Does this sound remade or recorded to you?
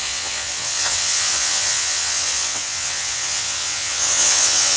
remade